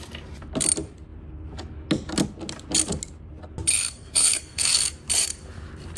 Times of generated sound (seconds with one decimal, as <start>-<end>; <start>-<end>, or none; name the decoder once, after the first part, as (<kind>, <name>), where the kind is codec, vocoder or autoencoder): 3.7-4.9 (codec, SNAC)